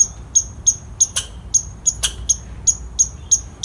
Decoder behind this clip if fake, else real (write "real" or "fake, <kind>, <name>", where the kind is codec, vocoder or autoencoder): real